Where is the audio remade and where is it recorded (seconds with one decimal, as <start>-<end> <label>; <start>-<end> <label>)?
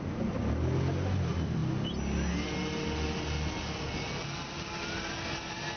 0.0-5.8 recorded